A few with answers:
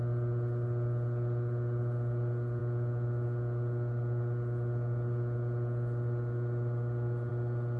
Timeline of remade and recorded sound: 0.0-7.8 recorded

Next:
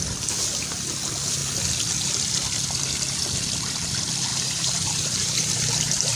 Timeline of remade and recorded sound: 0.0-4.3 recorded; 4.3-6.2 remade

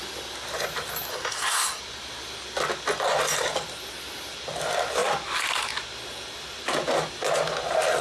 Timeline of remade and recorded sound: 0.0-1.1 recorded; 1.1-1.8 remade; 1.8-8.0 recorded

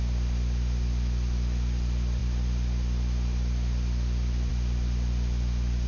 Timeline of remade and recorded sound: 0.0-5.9 recorded